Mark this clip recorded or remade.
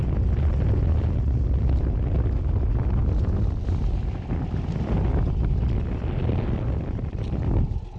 recorded